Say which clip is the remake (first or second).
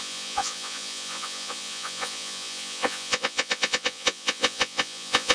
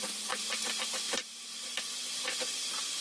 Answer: first